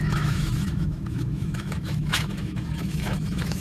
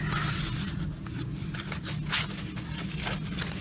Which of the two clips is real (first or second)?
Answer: second